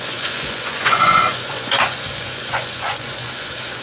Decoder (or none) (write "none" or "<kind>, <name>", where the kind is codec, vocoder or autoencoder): vocoder, Vocos